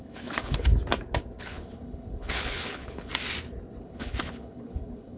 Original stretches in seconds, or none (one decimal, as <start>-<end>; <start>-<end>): 0.7-1.4; 3.1-3.8